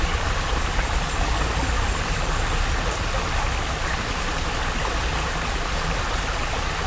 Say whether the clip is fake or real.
real